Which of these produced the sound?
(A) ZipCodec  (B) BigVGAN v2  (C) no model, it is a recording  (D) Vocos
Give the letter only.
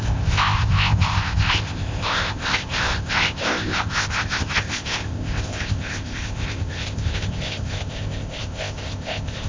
A